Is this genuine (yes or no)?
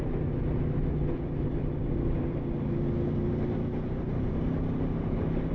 yes